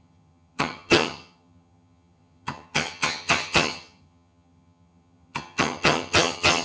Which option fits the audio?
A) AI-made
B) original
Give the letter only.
A